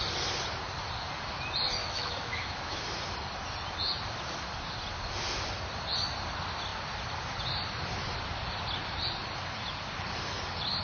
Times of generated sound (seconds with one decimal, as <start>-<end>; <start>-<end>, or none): 1.8-2.8